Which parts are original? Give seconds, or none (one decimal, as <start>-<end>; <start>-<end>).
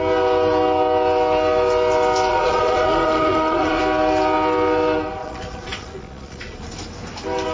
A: 0.0-2.3; 3.8-5.2; 6.7-7.5